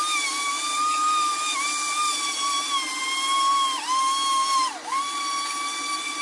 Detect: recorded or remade recorded